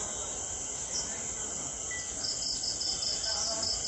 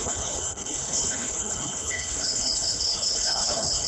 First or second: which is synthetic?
second